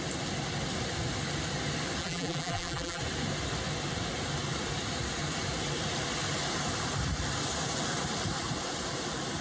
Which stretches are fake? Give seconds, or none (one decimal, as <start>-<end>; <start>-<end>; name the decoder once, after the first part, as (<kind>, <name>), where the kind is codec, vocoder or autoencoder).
2.0-3.0 (vocoder, BigVGAN v2)